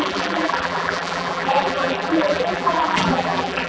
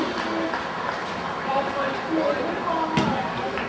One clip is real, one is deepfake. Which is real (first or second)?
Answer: second